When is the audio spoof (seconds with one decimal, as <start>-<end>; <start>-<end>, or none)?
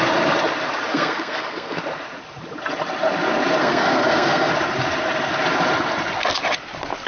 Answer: 0.9-1.8; 3.6-4.5